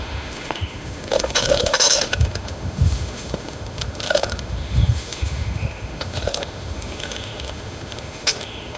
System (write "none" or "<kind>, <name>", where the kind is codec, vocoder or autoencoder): autoencoder, DAC-VAE